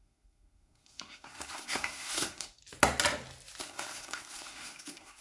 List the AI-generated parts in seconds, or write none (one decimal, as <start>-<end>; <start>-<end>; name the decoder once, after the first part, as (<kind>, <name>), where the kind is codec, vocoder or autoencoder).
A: 0.0-2.6 (codec, SNAC); 3.6-5.2